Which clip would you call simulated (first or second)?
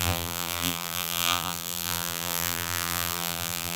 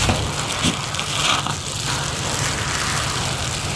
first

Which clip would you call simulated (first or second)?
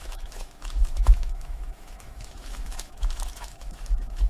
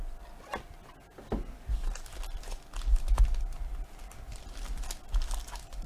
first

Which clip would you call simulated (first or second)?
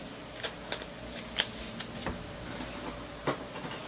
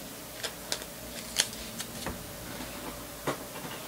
first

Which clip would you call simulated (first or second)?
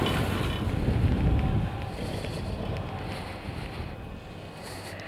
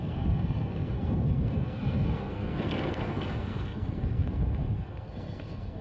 second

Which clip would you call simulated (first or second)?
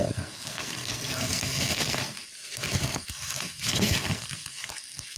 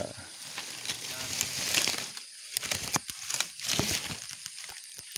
first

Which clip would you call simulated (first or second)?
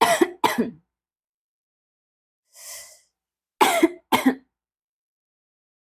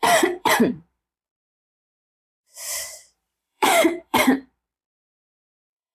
second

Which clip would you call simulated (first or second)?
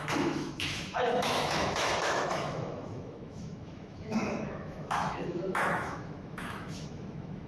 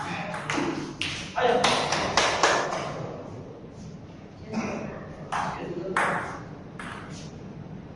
first